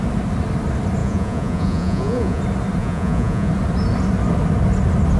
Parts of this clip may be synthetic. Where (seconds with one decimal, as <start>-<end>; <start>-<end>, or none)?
1.0-2.4; 2.8-3.5